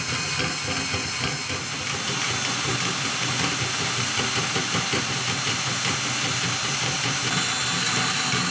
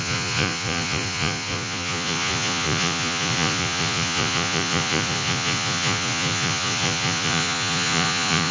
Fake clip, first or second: second